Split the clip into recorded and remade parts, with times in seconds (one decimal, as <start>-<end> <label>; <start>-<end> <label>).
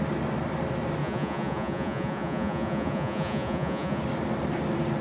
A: 0.0-1.0 recorded; 1.0-4.0 remade; 4.0-5.0 recorded